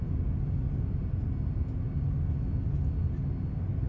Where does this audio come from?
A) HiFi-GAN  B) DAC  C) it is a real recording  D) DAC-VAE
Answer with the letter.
C